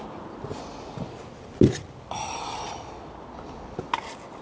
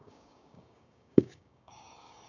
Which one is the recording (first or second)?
first